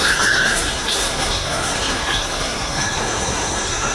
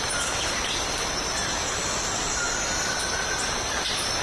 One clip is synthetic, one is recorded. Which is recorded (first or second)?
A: second